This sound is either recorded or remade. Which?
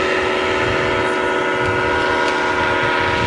recorded